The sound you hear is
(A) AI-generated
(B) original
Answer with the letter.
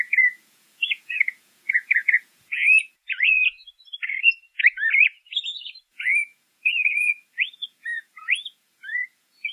A